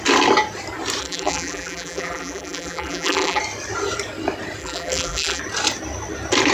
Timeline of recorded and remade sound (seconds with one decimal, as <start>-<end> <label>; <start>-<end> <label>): 0.0-1.0 recorded; 1.0-3.4 remade; 3.4-4.6 recorded; 4.6-5.4 remade; 5.4-6.5 recorded